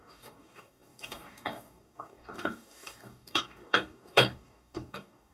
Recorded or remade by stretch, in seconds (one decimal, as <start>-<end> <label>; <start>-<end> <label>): 0.0-5.3 remade